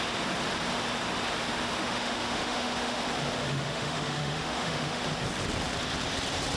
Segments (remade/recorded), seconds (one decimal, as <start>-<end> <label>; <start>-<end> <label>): 0.0-1.8 recorded; 1.8-3.0 remade; 3.0-3.4 recorded; 3.4-5.0 remade; 5.0-6.6 recorded